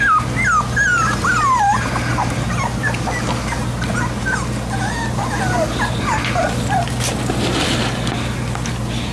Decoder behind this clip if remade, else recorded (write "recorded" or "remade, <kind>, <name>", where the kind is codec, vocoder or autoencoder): recorded